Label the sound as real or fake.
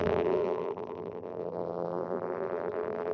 fake